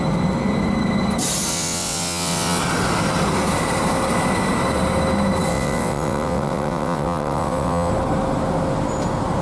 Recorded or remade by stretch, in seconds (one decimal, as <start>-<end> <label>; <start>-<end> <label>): 0.0-1.5 recorded; 1.5-2.6 remade; 2.6-5.5 recorded; 5.5-7.9 remade; 7.9-9.4 recorded